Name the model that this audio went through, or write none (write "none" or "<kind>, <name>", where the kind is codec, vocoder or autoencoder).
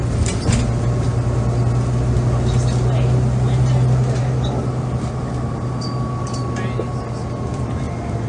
none